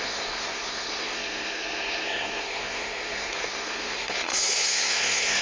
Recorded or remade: remade